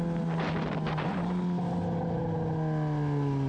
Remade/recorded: recorded